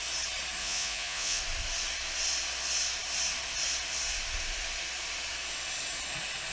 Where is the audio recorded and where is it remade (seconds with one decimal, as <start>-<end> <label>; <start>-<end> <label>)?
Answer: 0.0-0.6 recorded; 0.6-1.4 remade; 1.4-6.5 recorded